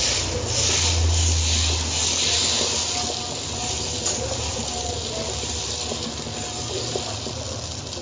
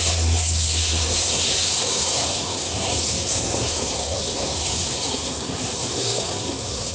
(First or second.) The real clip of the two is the first